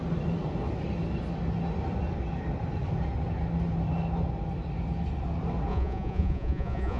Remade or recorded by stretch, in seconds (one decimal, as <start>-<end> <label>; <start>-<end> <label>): 0.0-5.7 recorded; 5.7-7.0 remade